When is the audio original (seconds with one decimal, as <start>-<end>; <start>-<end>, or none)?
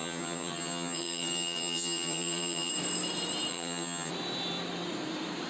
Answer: 2.7-3.5; 4.1-5.5